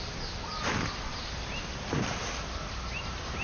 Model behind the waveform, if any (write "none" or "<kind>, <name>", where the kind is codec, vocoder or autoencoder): none